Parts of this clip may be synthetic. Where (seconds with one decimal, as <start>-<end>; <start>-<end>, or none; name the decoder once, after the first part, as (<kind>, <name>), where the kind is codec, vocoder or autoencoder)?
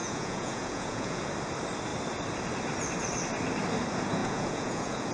0.0-1.2 (vocoder, Vocos); 4.2-5.1